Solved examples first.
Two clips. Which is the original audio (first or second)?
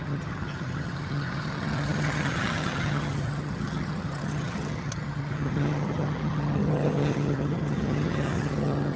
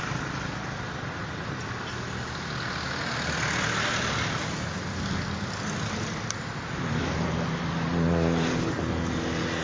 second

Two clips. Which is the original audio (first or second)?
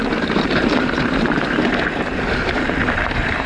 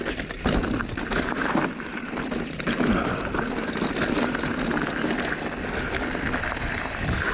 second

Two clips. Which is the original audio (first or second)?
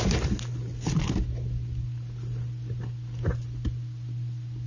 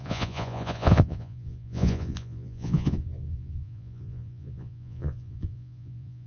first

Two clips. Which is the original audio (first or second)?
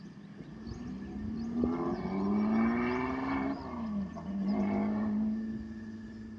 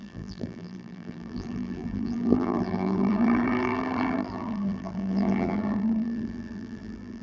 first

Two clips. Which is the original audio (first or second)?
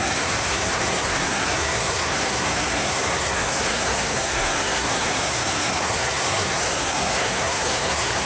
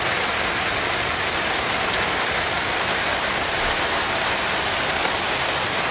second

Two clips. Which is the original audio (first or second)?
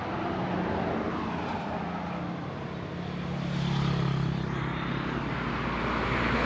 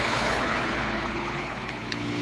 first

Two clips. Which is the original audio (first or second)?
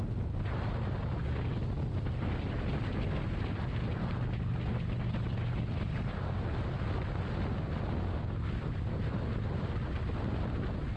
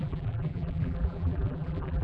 first